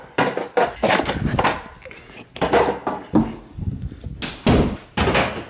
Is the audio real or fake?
real